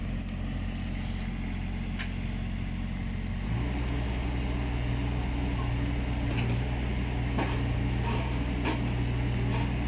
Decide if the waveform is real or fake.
real